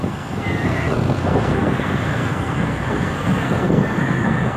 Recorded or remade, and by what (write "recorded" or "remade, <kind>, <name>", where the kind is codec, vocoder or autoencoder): remade, codec, SNAC